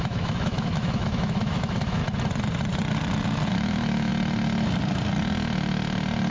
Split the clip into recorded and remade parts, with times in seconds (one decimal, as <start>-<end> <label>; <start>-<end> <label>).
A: 0.0-2.0 remade; 2.0-3.5 recorded; 3.5-4.1 remade; 4.1-6.3 recorded